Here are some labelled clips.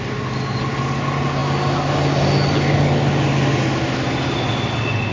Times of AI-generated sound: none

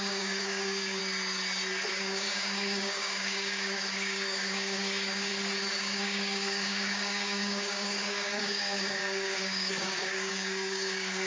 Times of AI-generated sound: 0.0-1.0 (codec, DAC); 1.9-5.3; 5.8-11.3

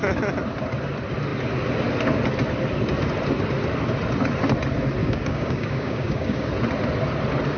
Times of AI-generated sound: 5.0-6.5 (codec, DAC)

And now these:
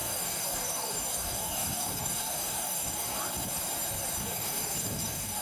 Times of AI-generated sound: 0.0-3.2 (codec, DAC); 4.2-5.4